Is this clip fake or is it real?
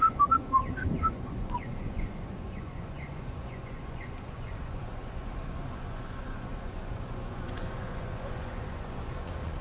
fake